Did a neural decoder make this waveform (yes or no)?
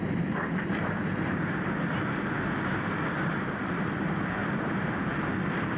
no